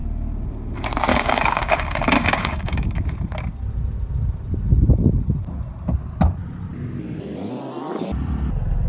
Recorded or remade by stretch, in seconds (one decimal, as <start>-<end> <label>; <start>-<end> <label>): 0.0-1.1 recorded; 1.1-3.0 remade; 3.0-8.9 recorded